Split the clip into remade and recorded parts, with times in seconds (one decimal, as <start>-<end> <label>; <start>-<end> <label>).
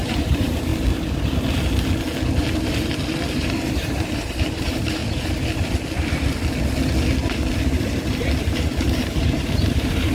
0.0-0.7 remade; 0.7-3.3 recorded; 3.3-5.0 remade; 5.0-8.4 recorded; 8.4-10.1 remade